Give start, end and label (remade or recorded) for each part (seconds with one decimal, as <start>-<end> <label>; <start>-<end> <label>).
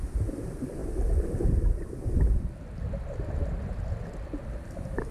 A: 0.0-5.1 recorded